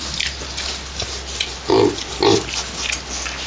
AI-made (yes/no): no